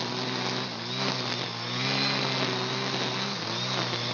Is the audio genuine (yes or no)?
yes